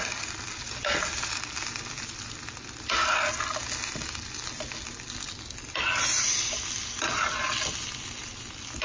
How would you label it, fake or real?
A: real